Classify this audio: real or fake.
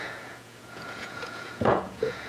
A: fake